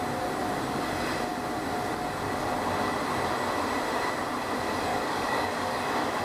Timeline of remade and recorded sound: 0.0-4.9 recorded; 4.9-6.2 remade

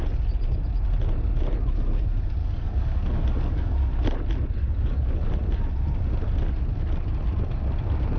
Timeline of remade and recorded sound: 0.0-2.4 recorded; 2.4-3.9 remade; 3.9-4.6 recorded; 4.6-5.2 remade; 5.2-8.2 recorded

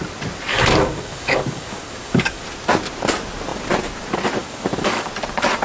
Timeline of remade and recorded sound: 0.0-0.5 recorded; 0.5-2.4 remade; 2.4-4.4 recorded; 4.4-5.1 remade; 5.1-5.6 recorded

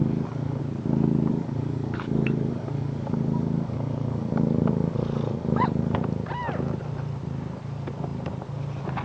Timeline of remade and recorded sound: 0.0-0.6 remade; 0.6-1.3 recorded; 1.3-6.0 remade; 6.0-9.0 recorded

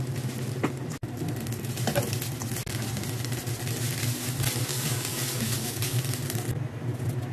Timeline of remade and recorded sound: 0.0-4.7 recorded; 4.7-6.0 remade; 6.0-7.3 recorded

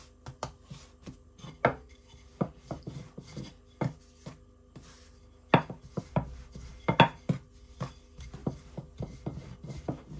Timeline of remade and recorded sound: 0.0-10.2 recorded

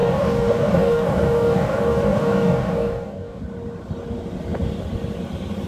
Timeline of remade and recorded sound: 0.0-3.4 remade; 3.4-5.7 recorded